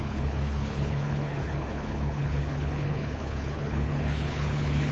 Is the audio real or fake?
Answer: fake